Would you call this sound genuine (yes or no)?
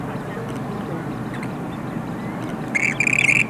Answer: yes